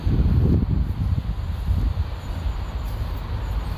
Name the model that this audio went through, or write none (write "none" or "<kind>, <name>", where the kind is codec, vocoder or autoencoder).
none